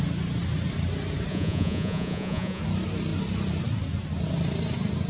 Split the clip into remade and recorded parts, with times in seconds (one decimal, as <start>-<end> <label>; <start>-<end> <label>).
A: 0.0-1.3 recorded; 1.3-2.6 remade; 2.6-5.1 recorded